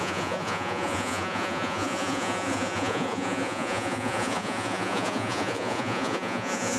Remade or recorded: remade